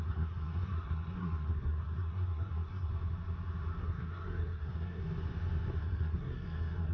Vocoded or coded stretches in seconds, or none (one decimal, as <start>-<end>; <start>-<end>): 0.0-2.9; 3.8-5.0; 5.8-6.9